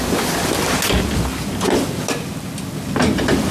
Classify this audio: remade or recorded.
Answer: recorded